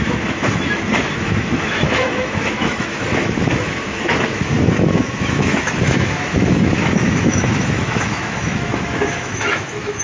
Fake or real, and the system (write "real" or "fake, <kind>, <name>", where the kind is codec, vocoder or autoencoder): fake, autoencoder, DAC-VAE